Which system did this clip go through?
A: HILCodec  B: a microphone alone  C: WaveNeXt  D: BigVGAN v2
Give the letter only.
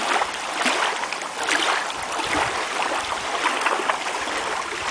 B